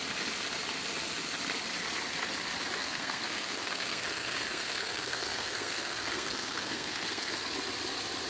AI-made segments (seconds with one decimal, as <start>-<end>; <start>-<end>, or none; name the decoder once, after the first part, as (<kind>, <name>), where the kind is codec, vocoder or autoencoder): 2.8-7.3 (codec, SNAC)